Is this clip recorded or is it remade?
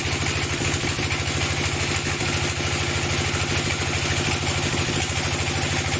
recorded